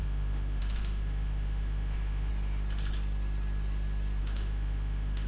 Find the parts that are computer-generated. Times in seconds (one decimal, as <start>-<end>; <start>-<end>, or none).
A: 0.0-2.3; 4.2-5.3